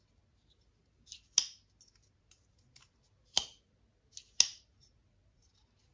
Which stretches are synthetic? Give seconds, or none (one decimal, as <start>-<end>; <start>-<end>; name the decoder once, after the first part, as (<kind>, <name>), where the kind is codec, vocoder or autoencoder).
none